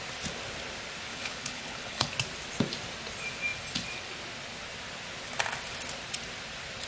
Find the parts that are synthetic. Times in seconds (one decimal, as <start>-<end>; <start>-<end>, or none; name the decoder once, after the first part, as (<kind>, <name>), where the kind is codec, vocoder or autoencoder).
1.1-2.1 (codec, HILCodec)